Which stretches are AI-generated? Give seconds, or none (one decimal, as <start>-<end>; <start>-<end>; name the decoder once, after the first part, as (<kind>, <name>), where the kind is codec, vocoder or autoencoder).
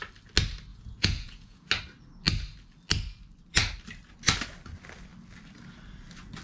0.7-1.7 (vocoder, Vocos)